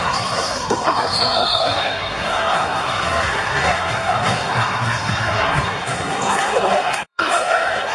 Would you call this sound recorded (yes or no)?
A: no